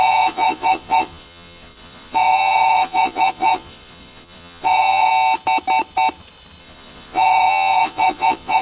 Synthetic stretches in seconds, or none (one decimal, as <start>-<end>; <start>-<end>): 0.0-5.1; 6.6-8.6